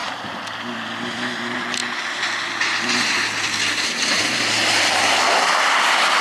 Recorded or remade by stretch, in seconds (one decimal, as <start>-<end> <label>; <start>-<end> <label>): 0.0-6.2 recorded